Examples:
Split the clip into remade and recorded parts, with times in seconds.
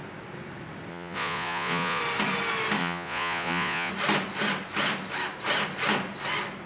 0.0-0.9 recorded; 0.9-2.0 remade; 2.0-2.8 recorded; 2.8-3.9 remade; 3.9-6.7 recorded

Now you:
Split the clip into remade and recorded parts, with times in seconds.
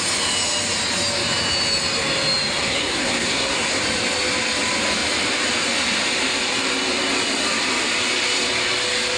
0.0-2.6 recorded; 2.6-3.8 remade; 3.8-9.2 recorded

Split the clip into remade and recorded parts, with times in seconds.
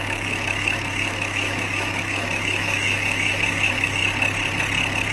0.0-4.0 remade; 4.0-5.1 recorded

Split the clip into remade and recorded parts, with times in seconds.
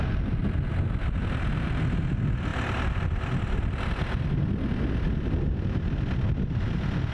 0.0-2.5 recorded; 2.5-3.8 remade; 3.8-7.1 recorded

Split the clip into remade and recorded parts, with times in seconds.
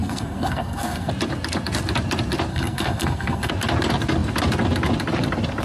0.0-1.1 remade; 1.1-2.5 recorded; 2.5-3.5 remade; 3.5-5.6 recorded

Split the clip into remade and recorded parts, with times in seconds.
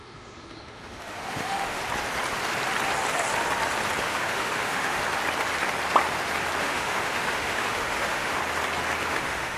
0.0-1.8 remade; 1.8-4.0 recorded; 4.0-5.0 remade; 5.0-6.6 recorded; 6.6-8.4 remade; 8.4-9.1 recorded; 9.1-9.6 remade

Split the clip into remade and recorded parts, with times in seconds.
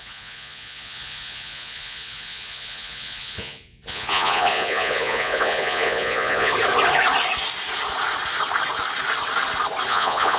0.0-6.5 remade; 6.5-9.9 recorded; 9.9-10.4 remade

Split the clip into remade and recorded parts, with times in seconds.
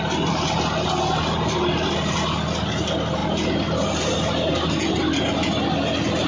0.0-6.3 recorded